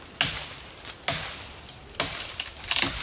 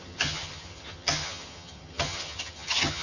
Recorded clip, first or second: first